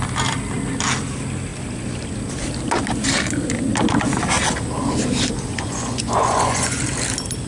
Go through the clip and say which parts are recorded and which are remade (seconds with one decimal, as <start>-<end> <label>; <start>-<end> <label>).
0.0-5.5 recorded; 5.5-6.8 remade; 6.8-7.5 recorded